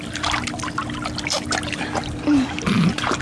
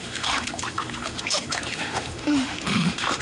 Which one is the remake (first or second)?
second